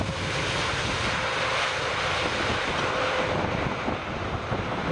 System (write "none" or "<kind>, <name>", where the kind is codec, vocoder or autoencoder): none